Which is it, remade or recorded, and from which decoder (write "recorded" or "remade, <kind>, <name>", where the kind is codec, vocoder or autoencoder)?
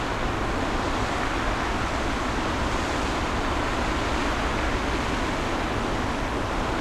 recorded